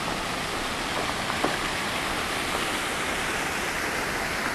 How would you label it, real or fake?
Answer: real